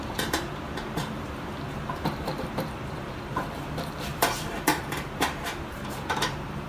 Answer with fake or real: fake